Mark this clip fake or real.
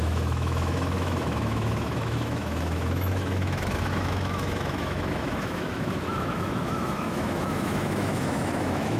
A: fake